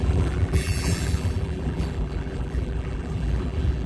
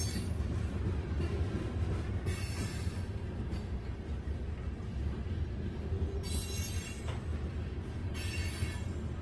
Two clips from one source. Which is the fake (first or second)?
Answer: first